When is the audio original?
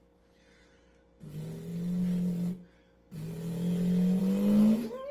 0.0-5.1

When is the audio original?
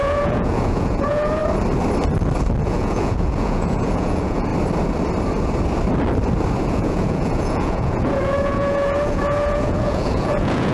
1.4-2.6; 4.5-6.6